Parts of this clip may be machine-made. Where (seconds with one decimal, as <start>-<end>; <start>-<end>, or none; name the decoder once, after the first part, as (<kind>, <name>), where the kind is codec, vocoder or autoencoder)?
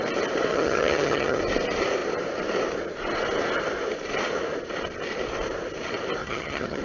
0.5-1.4 (vocoder, HiFi-GAN); 6.2-6.8